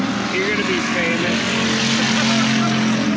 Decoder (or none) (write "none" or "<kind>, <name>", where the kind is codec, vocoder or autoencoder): none